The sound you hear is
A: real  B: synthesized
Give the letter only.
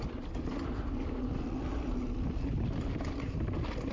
A